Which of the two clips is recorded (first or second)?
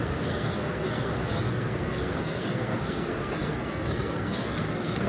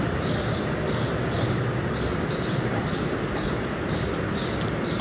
second